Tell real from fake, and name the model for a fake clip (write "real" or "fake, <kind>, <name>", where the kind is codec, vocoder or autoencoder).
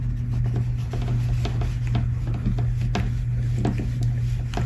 real